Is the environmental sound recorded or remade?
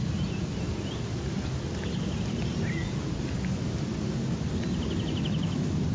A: recorded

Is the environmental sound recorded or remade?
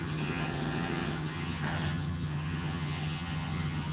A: remade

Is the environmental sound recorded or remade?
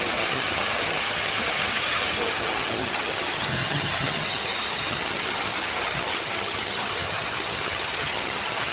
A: remade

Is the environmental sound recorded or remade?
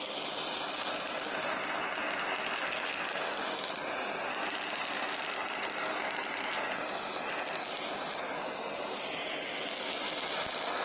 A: recorded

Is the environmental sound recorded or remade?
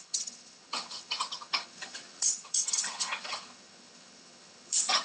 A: remade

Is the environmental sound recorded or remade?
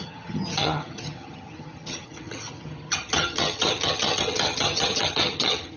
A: remade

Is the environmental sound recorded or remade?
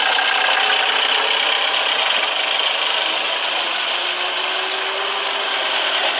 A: recorded